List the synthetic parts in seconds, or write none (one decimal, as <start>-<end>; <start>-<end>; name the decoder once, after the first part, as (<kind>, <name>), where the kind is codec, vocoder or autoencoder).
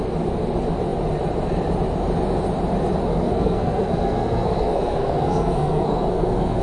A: 3.1-6.6 (codec, SNAC)